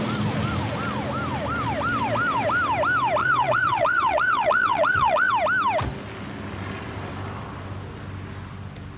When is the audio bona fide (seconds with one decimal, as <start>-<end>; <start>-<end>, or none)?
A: 0.0-3.2; 5.3-9.0